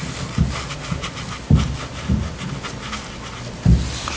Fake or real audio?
real